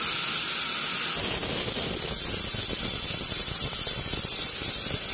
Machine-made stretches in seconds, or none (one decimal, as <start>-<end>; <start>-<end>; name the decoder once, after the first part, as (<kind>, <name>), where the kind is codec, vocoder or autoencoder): none